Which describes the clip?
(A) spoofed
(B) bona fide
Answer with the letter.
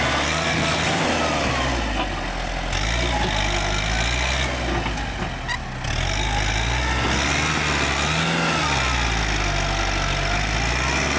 B